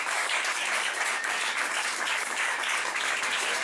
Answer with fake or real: fake